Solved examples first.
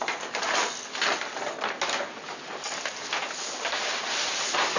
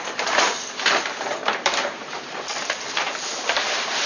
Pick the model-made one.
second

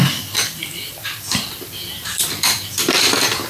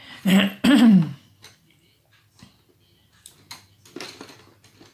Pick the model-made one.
first